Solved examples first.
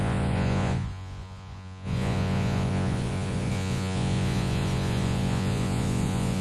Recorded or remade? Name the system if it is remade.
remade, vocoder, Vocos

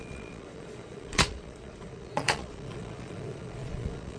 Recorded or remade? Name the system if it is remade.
remade, vocoder, Vocos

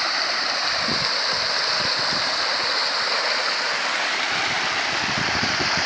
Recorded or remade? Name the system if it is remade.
recorded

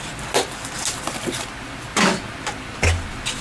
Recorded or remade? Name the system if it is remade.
recorded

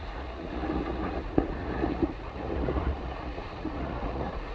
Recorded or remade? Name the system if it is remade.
remade, vocoder, Vocos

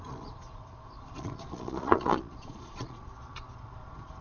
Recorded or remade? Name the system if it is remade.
remade, vocoder, Vocos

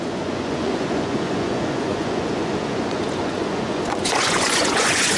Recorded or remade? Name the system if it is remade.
remade, vocoder, Vocos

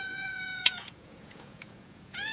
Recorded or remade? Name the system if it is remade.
remade, vocoder, Vocos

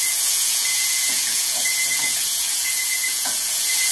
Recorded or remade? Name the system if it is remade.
remade, vocoder, Vocos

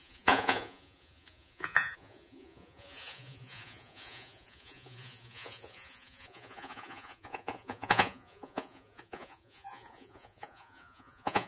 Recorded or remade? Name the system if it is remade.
remade, vocoder, Vocos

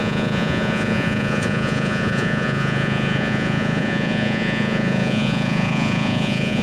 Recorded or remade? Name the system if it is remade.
remade, vocoder, Vocos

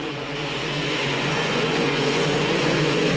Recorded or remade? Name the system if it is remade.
remade, vocoder, Vocos